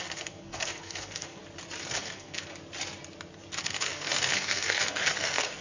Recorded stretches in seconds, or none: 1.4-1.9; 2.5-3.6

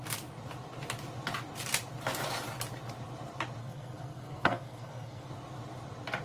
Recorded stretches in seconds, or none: 0.0-3.6; 5.3-6.2

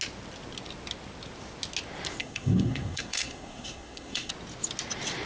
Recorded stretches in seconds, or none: 0.0-2.2; 4.3-5.3

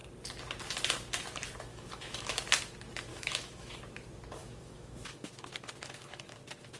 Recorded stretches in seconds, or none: 0.0-1.7; 2.4-3.1; 3.8-4.4; 5.3-6.8

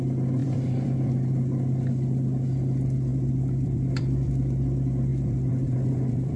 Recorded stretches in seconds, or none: 0.0-0.4; 1.1-3.1; 4.3-5.1